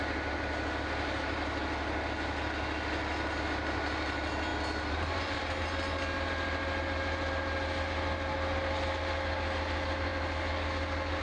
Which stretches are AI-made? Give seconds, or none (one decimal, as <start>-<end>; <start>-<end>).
none